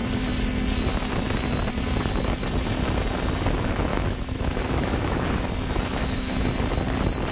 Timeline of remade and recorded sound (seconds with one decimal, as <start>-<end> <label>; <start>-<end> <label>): 0.0-3.9 recorded; 3.9-5.5 remade; 5.5-6.0 recorded; 6.0-6.5 remade; 6.5-7.3 recorded